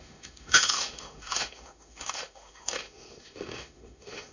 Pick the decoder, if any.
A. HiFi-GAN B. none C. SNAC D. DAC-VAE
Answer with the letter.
D